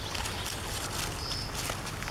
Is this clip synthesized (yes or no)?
no